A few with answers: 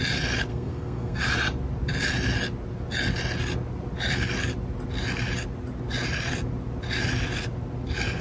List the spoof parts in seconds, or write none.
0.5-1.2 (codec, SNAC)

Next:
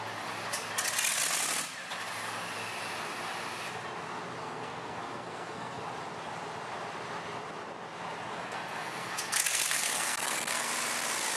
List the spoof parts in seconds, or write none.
4.4-5.8 (codec, SNAC); 8.4-10.7